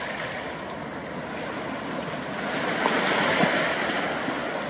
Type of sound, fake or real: real